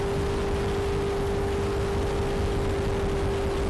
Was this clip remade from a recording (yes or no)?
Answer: no